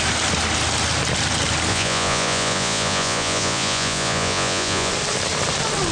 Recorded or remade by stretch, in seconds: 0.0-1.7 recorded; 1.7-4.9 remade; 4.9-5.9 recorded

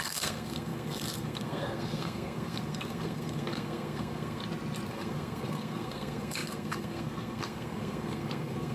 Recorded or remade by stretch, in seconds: 0.0-4.4 remade; 4.4-4.9 recorded; 4.9-8.7 remade